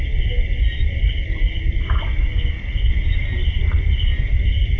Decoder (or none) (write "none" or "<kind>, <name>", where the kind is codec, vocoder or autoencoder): none